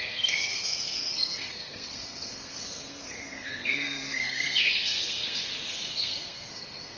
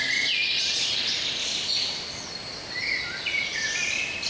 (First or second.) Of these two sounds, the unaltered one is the second